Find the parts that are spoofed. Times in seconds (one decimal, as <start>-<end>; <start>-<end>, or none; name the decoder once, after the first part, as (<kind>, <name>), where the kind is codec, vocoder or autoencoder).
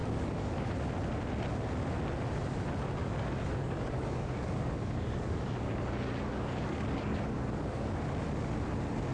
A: 0.0-0.7 (codec, DAC); 3.0-8.0